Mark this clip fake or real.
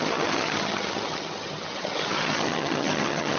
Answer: fake